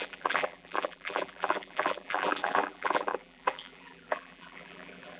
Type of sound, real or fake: fake